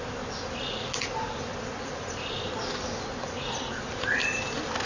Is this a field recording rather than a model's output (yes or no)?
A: yes